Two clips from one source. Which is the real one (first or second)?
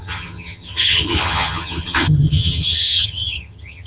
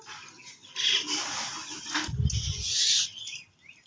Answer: second